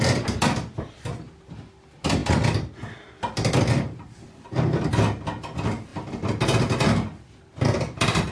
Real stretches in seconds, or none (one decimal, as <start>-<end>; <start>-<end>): 0.0-8.3